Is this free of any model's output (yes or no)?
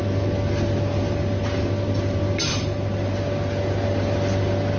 yes